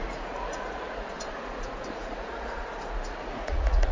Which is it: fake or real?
fake